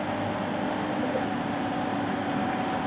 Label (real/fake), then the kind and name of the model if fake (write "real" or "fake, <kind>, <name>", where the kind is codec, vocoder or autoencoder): real